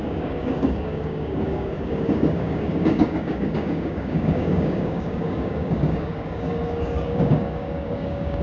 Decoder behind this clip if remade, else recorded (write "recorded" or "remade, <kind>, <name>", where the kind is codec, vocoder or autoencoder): remade, codec, DAC